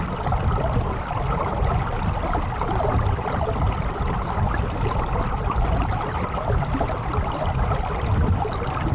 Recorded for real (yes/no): yes